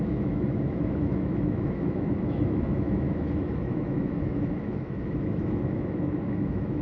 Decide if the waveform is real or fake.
fake